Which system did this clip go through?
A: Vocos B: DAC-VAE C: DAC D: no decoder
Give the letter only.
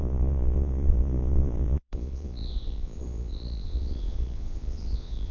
A